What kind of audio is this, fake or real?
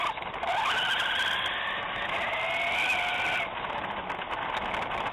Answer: real